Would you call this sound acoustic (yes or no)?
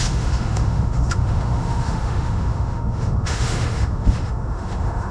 no